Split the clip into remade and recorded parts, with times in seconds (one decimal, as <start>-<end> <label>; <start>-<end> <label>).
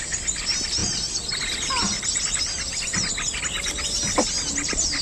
0.0-5.0 recorded